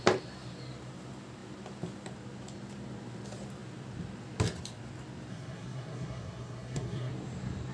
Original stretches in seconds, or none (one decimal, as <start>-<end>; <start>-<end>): 0.0-5.3; 7.1-7.7